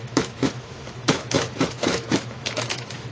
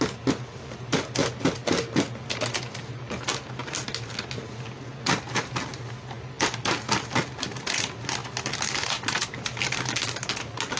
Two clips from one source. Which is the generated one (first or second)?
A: first